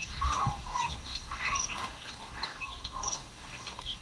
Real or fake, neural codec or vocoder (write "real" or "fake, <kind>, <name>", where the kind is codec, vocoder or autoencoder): fake, codec, DAC